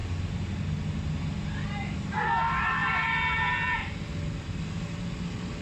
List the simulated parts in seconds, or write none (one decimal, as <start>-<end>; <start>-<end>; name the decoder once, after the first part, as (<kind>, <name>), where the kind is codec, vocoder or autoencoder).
none